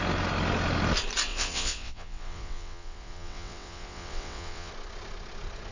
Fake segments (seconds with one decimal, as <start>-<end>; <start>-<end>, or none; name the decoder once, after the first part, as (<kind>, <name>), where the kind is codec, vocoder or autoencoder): 1.3-4.7 (vocoder, WaveNeXt)